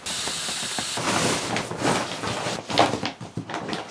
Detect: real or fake real